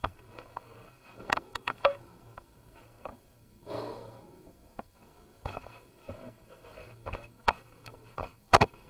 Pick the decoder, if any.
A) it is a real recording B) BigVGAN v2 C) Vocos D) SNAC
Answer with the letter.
D